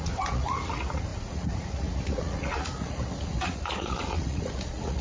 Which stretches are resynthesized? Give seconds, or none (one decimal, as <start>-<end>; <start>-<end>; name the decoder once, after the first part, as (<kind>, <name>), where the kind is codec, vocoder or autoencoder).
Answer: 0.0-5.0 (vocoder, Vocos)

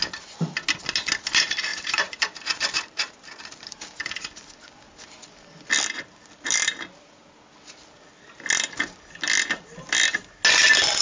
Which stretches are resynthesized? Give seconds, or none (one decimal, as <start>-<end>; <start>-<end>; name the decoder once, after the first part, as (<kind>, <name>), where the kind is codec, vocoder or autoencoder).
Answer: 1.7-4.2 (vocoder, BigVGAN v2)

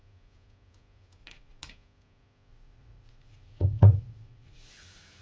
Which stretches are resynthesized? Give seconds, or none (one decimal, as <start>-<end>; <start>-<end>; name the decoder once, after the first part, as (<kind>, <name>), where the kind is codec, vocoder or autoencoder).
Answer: 1.2-1.7 (vocoder, Vocos); 2.5-4.7

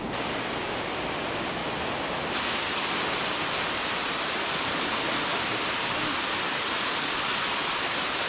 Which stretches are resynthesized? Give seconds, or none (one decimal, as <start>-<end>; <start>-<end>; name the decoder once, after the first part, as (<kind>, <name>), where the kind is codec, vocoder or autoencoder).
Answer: 7.3-8.3 (vocoder, BigVGAN v2)

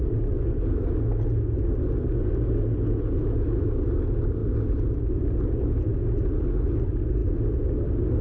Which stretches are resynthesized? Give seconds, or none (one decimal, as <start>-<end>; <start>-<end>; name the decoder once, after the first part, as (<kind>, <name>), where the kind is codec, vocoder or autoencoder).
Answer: none

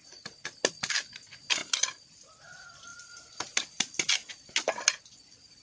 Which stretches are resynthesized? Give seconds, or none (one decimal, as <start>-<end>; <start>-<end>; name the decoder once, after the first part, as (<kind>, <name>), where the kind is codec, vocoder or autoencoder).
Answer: none

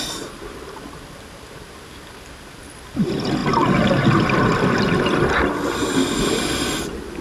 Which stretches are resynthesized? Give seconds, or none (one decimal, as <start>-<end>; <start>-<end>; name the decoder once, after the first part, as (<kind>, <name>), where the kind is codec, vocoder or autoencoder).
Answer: none